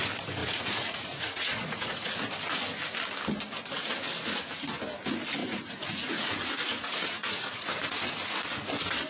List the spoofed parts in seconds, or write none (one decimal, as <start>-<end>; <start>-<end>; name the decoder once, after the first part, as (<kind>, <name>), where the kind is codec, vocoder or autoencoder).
0.4-2.3 (vocoder, Vocos); 5.4-8.0